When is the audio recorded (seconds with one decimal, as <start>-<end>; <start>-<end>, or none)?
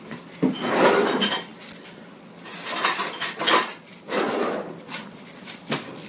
1.5-3.4; 3.9-4.7